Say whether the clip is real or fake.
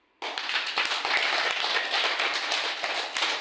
real